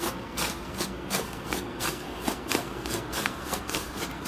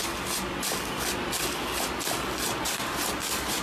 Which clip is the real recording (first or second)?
second